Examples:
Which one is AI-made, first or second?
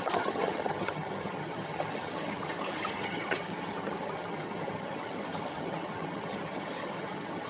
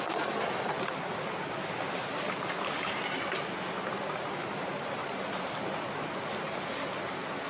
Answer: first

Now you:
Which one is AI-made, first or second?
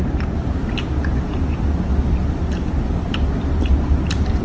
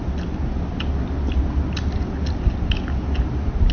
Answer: first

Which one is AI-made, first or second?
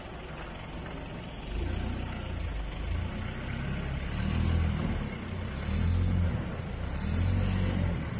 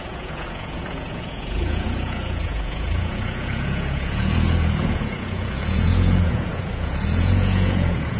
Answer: second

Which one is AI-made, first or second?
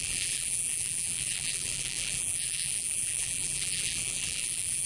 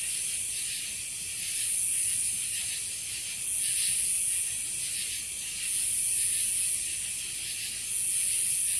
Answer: first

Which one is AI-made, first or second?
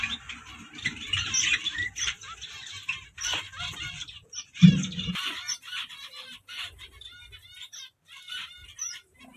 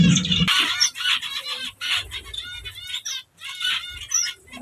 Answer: first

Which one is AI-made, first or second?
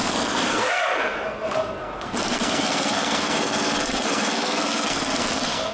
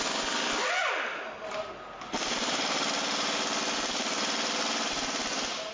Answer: first